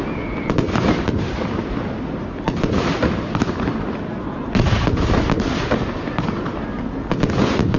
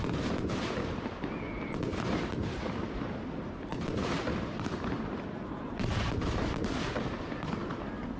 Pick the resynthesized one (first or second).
second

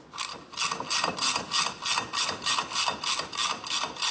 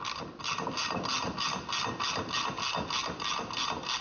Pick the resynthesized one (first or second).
first